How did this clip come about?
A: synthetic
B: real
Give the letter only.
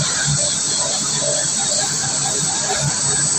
B